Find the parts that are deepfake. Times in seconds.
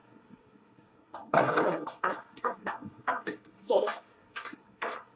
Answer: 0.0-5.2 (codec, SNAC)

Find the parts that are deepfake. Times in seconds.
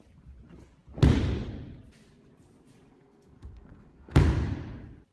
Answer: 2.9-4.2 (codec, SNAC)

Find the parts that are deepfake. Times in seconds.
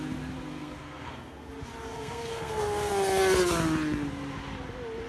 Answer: 0.5-1.5 (codec, SNAC); 1.9-2.9